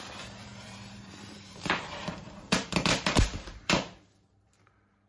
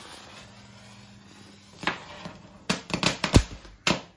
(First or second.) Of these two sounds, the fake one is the first